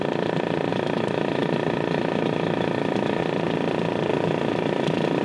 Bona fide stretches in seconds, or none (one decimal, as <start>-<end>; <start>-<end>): 0.0-0.7; 3.2-4.1